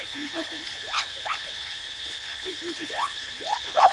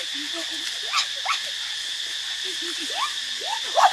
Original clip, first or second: second